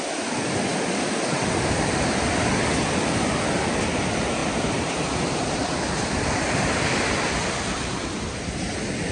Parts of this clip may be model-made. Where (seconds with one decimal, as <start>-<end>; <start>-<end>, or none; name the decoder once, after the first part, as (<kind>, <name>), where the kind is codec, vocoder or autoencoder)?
none

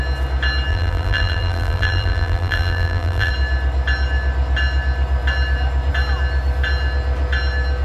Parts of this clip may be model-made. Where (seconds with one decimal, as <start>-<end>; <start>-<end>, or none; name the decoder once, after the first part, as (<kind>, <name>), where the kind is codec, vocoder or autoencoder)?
0.7-3.3 (vocoder, BigVGAN v2)

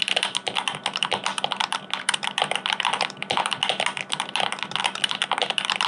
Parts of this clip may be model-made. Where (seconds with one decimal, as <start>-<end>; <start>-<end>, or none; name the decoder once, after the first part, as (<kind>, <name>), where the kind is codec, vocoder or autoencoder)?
none

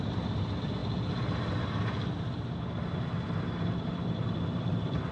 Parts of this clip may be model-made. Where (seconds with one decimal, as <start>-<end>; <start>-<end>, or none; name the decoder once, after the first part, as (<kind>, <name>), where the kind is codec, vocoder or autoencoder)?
0.0-0.8 (vocoder, BigVGAN v2); 3.9-5.1

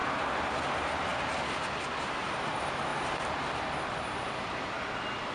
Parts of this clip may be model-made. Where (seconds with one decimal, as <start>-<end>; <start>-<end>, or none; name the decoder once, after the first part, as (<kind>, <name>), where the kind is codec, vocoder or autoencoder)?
0.0-1.1 (vocoder, BigVGAN v2); 2.0-2.9

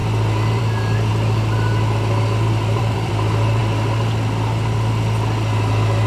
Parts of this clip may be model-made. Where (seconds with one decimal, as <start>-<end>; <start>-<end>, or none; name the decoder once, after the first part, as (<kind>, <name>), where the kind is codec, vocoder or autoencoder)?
1.1-3.1 (vocoder, BigVGAN v2)